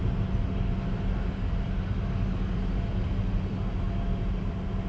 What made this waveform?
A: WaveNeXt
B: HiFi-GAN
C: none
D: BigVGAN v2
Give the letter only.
C